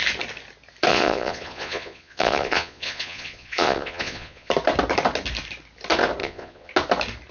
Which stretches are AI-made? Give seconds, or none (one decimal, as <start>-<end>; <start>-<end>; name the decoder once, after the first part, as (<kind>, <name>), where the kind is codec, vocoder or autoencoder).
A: 0.9-4.5 (vocoder, Vocos); 6.2-6.7